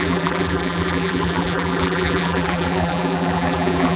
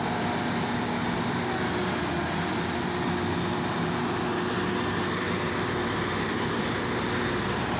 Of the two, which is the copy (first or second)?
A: first